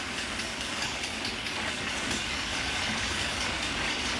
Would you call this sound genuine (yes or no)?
no